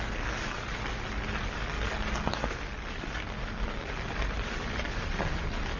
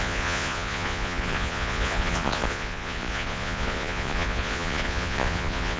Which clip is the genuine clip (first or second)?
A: first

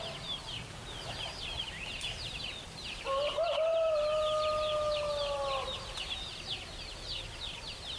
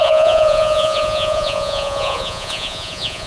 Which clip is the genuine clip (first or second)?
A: first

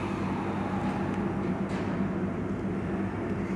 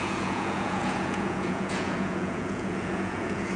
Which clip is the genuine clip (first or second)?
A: first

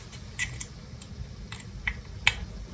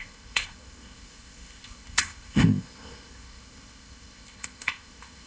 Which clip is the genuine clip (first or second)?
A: first